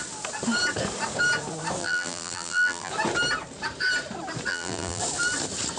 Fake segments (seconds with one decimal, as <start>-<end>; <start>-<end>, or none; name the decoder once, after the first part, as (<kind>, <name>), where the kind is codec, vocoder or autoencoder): 1.8-2.9 (vocoder, BigVGAN v2); 4.5-5.0